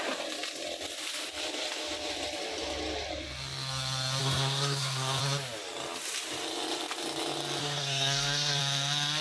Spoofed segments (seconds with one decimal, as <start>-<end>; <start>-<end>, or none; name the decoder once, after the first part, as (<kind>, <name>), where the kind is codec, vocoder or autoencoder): 4.2-5.2 (codec, SNAC); 7.6-8.6